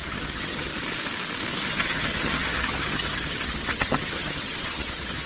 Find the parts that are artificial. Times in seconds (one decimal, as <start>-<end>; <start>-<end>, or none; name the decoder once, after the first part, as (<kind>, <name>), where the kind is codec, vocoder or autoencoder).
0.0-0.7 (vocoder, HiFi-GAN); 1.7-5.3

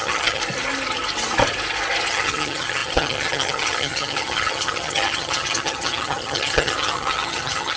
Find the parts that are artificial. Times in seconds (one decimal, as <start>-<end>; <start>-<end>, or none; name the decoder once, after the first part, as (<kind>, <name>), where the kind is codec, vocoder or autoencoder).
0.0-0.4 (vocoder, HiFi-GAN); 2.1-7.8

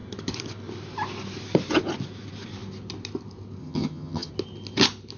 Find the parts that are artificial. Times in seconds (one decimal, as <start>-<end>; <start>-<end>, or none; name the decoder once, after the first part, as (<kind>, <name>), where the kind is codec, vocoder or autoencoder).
3.6-4.3 (vocoder, HiFi-GAN)

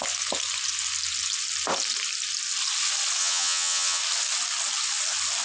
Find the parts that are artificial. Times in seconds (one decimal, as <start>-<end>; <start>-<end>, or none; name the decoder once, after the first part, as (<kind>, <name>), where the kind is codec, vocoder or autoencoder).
3.2-4.0 (vocoder, HiFi-GAN)

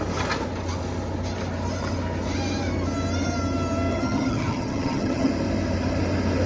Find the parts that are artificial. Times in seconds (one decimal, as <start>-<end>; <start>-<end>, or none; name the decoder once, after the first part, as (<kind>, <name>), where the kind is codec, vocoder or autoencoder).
3.9-5.3 (vocoder, HiFi-GAN)